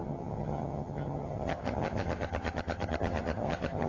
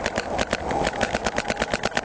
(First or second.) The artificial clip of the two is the first